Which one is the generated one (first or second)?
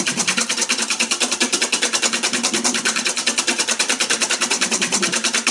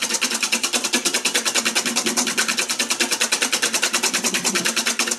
first